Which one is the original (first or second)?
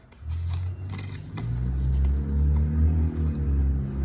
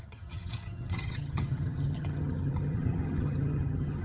first